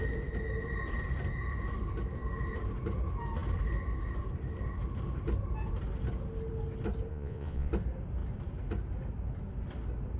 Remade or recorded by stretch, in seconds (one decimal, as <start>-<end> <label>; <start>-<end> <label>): 0.0-7.1 recorded; 7.1-7.7 remade; 7.7-10.2 recorded